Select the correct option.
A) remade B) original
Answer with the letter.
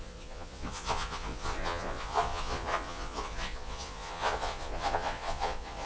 A